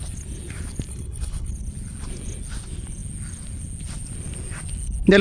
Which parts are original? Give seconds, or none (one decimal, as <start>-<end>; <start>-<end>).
0.0-0.9; 1.5-5.2

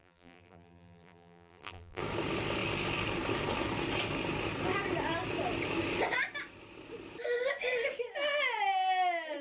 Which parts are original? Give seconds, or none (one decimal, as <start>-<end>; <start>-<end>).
2.0-9.4

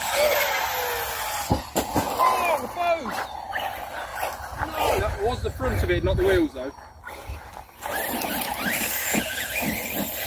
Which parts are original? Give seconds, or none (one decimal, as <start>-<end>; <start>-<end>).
0.0-9.0; 9.6-10.3

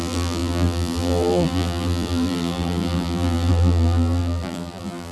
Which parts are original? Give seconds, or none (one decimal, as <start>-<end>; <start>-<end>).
none

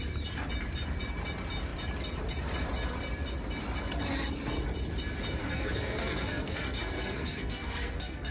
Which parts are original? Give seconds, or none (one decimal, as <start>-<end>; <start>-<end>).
0.0-5.4